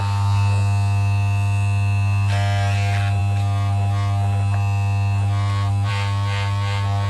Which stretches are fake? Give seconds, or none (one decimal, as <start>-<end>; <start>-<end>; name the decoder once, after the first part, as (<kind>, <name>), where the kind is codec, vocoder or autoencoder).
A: none